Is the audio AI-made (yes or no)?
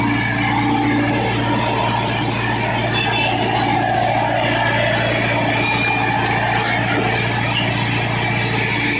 no